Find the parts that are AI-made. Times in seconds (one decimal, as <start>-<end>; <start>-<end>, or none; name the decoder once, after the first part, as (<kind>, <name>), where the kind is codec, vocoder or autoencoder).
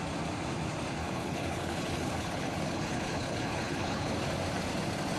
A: 1.0-4.1 (codec, HILCodec)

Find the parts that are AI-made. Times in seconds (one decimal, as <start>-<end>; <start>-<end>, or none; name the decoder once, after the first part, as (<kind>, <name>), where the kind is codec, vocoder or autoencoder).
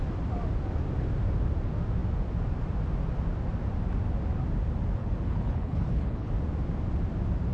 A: 5.0-6.3 (codec, HILCodec)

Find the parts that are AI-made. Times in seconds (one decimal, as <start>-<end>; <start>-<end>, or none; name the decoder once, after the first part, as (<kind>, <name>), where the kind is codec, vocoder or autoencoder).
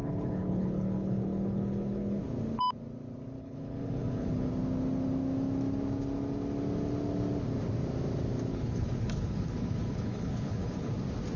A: 0.0-2.2 (codec, HILCodec); 3.4-4.5; 8.5-10.9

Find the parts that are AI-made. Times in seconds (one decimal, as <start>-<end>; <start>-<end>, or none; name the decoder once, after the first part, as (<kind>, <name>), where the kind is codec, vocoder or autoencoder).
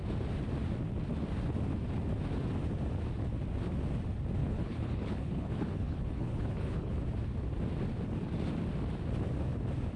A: 4.4-6.9 (codec, HILCodec)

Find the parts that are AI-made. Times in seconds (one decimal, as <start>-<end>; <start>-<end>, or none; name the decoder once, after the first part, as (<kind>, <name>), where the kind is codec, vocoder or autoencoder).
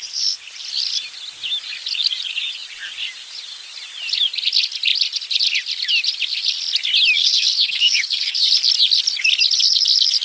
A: 7.2-8.5 (codec, HILCodec)